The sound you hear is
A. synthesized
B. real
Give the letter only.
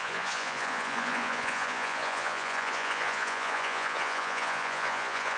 A